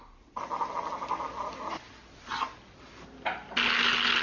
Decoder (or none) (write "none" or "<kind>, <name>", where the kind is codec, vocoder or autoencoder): none